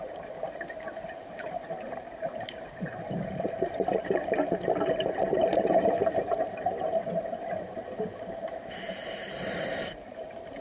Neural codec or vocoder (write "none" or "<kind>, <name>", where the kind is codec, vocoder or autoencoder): vocoder, BigVGAN v2